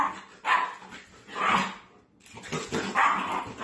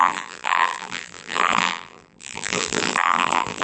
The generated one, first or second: second